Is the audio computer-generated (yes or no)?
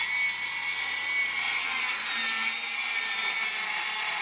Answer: no